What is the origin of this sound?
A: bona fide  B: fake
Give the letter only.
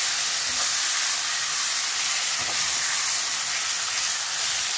A